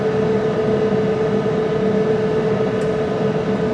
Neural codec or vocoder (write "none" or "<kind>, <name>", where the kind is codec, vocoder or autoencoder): none